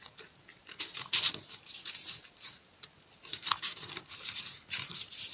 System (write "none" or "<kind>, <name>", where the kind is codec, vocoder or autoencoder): vocoder, BigVGAN v2